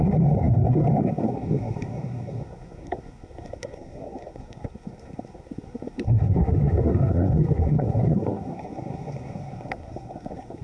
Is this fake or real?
fake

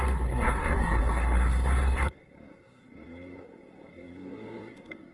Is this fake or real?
fake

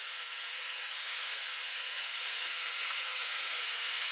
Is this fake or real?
fake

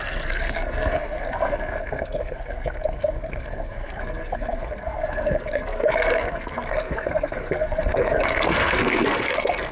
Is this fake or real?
fake